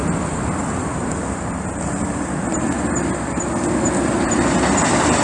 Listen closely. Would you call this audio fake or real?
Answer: real